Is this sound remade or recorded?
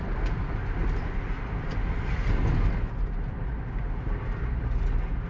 recorded